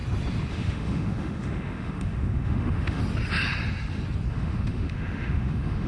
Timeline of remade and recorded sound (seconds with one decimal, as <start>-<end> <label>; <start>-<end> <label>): 0.0-0.5 recorded; 0.5-3.0 remade; 3.0-4.3 recorded; 4.3-5.9 remade